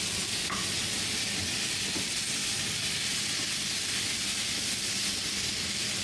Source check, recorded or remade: recorded